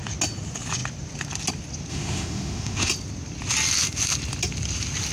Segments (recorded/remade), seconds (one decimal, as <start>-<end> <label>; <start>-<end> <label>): 0.0-1.9 recorded; 1.9-2.9 remade; 2.9-5.1 recorded